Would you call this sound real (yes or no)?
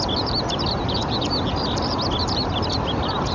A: yes